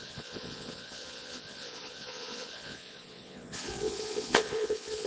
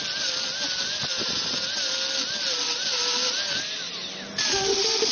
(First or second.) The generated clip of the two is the first